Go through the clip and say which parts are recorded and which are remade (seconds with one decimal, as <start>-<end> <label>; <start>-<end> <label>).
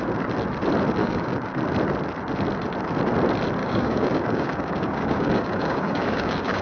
0.0-1.0 recorded; 1.0-1.6 remade; 1.6-3.6 recorded; 3.6-6.6 remade